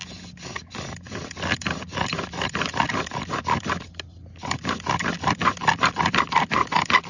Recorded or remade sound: recorded